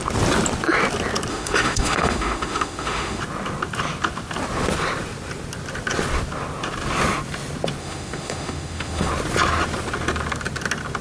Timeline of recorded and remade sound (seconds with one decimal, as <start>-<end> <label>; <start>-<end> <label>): 0.0-1.3 recorded; 1.3-3.2 remade; 3.2-7.8 recorded; 7.8-9.1 remade; 9.1-11.0 recorded